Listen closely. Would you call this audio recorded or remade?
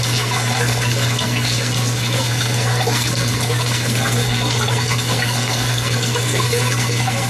remade